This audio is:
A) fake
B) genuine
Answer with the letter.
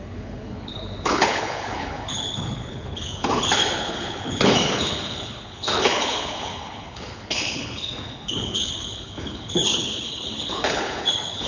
A